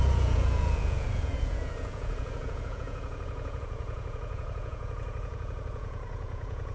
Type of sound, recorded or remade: remade